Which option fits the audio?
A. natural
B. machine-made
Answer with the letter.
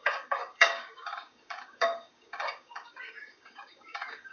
B